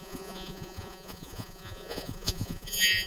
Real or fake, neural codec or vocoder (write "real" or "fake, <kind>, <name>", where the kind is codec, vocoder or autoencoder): fake, vocoder, Vocos